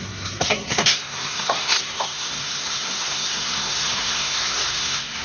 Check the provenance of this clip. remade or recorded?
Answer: remade